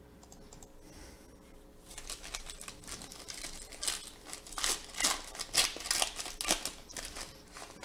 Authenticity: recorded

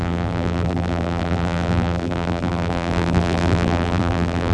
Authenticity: remade